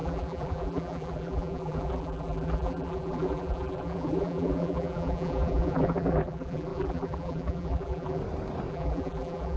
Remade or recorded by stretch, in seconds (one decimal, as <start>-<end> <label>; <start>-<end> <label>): 0.0-8.2 remade; 8.2-8.7 recorded; 8.7-9.6 remade